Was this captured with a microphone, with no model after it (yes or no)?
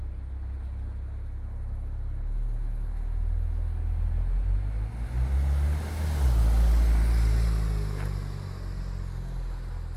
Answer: yes